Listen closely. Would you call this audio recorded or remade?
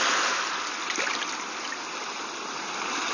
recorded